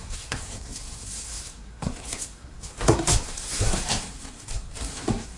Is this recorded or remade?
remade